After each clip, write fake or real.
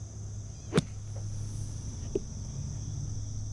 real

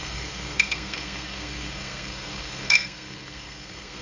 fake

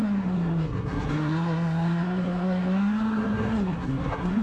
fake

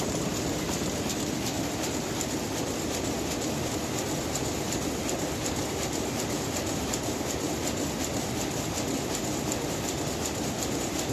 real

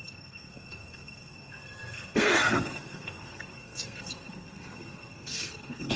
fake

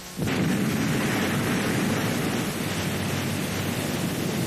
real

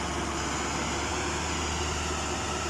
real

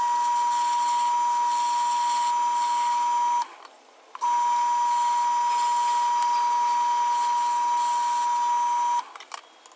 real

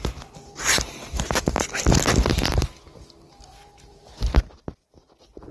real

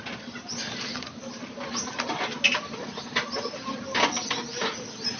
real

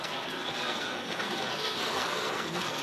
fake